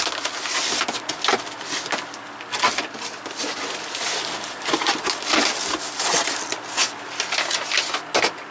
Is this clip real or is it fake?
real